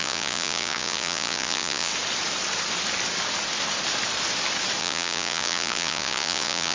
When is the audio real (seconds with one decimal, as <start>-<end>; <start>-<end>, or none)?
1.9-4.8

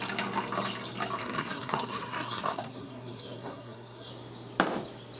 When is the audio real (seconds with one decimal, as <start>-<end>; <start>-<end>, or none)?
0.0-1.2; 4.1-5.2

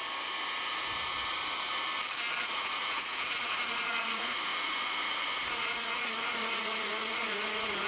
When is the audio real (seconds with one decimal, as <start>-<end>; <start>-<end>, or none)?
0.0-2.4; 4.5-5.5

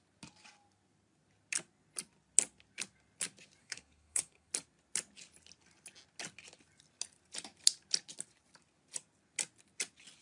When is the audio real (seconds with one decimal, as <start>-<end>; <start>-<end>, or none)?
0.0-3.6; 4.5-10.2

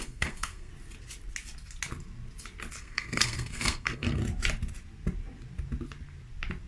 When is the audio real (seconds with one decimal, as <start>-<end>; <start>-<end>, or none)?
0.7-2.8; 4.2-6.7

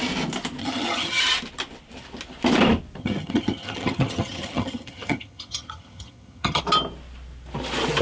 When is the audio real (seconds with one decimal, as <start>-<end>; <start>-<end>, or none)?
0.0-0.6; 1.2-3.0; 6.6-8.0

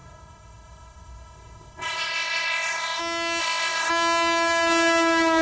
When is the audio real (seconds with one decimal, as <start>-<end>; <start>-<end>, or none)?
3.0-3.4; 3.9-5.4

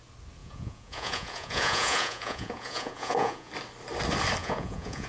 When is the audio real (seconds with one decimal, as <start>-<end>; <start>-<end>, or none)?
0.0-0.4; 3.5-4.4